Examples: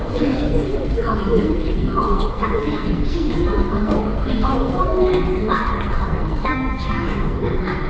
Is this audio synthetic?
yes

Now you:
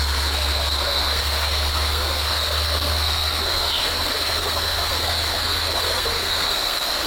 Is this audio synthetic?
yes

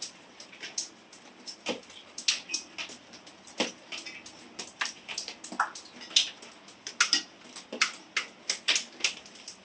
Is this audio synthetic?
no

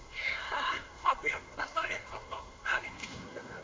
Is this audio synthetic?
yes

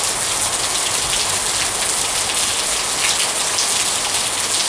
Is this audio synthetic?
no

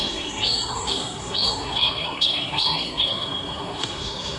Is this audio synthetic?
yes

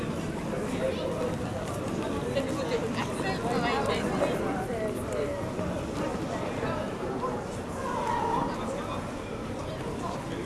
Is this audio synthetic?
no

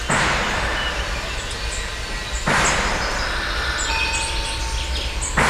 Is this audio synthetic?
no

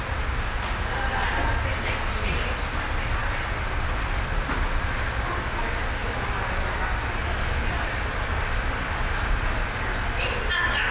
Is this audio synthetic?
no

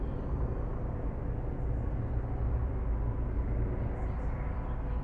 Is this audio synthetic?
no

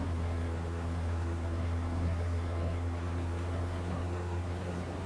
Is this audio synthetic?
yes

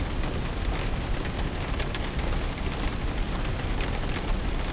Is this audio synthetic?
no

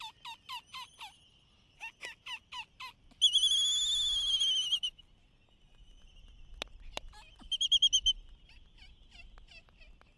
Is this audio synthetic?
no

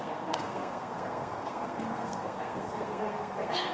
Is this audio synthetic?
yes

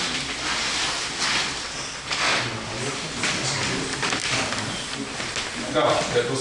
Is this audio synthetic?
no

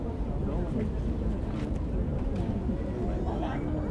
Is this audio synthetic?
no